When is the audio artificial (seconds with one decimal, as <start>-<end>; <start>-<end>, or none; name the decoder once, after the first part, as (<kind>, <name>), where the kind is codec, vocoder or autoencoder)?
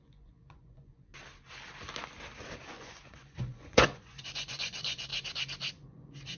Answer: 0.0-1.1 (vocoder, Vocos); 2.7-5.1; 5.7-6.4